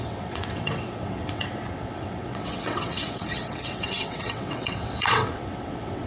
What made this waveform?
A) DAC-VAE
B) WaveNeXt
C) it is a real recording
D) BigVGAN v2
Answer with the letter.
B